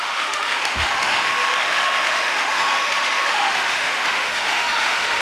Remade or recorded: remade